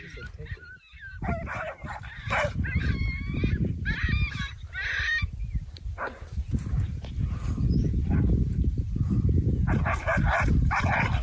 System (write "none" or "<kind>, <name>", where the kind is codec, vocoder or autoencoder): vocoder, BigVGAN v2